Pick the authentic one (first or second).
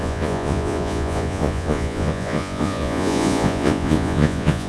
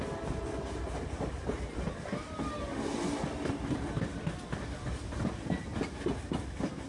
second